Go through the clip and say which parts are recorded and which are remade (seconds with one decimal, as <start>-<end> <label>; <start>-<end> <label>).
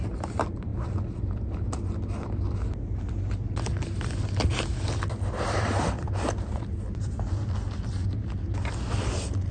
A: 0.0-0.7 remade; 0.7-5.4 recorded; 5.4-8.0 remade; 8.0-8.9 recorded; 8.9-9.5 remade